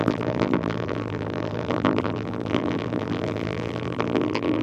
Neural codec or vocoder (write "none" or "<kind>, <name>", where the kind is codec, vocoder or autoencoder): vocoder, BigVGAN v2